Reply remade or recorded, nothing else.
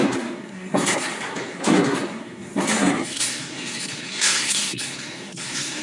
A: remade